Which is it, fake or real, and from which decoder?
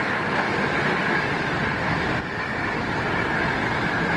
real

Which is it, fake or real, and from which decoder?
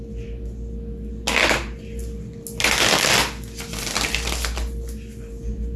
real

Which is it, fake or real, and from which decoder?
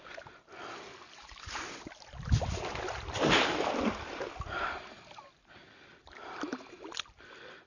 real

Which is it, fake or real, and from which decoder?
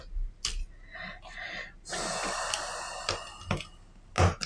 real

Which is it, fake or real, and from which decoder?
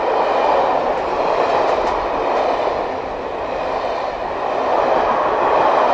real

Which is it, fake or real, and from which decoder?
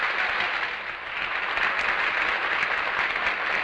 real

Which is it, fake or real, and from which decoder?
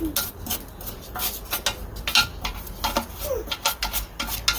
real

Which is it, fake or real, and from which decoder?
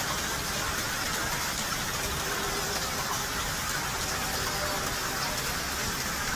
real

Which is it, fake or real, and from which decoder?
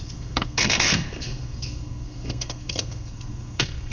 fake, codec, SNAC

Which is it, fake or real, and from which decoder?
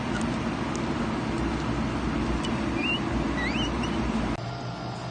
real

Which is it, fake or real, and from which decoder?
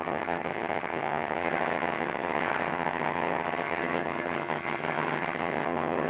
fake, vocoder, HiFi-GAN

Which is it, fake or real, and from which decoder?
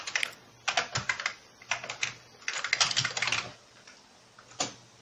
real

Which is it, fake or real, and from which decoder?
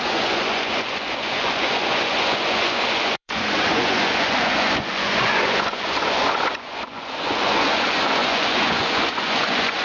fake, vocoder, Vocos